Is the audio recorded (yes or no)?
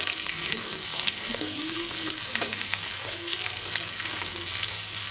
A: no